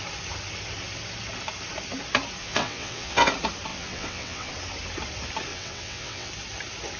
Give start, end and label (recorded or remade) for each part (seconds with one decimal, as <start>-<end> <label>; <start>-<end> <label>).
0.0-2.4 recorded; 2.4-3.3 remade; 3.3-3.7 recorded; 3.7-4.5 remade; 4.5-5.5 recorded; 5.5-6.3 remade; 6.3-7.0 recorded